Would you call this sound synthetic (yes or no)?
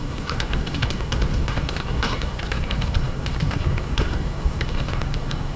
yes